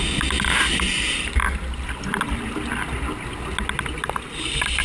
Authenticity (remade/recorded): recorded